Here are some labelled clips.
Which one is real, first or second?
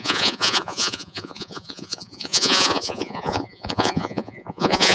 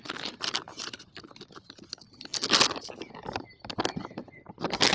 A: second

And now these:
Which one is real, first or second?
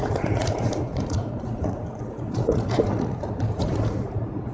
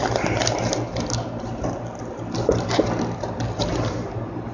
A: second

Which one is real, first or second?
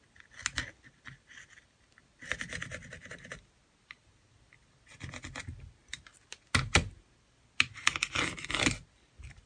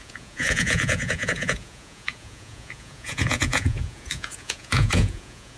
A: first